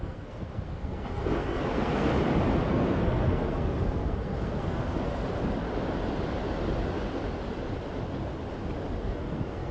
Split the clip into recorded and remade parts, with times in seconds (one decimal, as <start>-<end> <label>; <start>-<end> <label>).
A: 0.0-2.1 remade; 2.1-2.7 recorded; 2.7-5.2 remade; 5.2-9.0 recorded; 9.0-9.7 remade